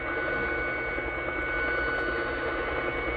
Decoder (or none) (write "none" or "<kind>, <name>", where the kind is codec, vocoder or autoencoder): none